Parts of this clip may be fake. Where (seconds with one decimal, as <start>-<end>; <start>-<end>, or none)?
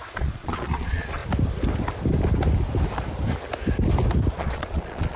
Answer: 0.0-1.2; 4.3-5.2